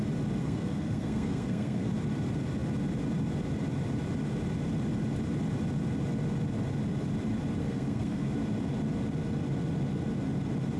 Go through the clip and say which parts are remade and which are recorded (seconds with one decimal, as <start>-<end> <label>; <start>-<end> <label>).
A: 0.0-0.4 recorded; 0.4-1.9 remade; 1.9-7.6 recorded; 7.6-8.3 remade; 8.3-10.8 recorded